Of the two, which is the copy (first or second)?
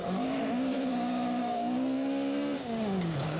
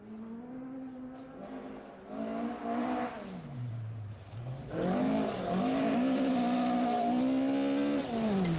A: first